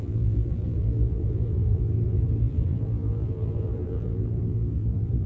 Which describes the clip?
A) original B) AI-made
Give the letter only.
B